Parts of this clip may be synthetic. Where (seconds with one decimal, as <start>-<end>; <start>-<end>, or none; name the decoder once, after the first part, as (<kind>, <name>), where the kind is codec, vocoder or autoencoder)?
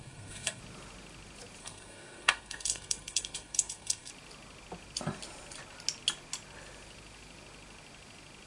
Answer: 0.0-0.6 (codec, SNAC); 1.6-4.1